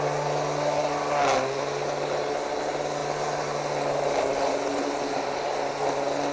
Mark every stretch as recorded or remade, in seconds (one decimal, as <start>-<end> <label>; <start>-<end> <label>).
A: 0.0-3.0 recorded; 3.0-5.2 remade; 5.2-6.3 recorded